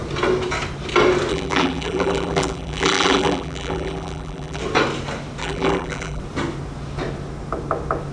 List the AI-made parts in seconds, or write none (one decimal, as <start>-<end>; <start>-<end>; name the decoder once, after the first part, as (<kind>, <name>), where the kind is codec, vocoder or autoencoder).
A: 1.3-4.6 (vocoder, BigVGAN v2); 5.4-6.2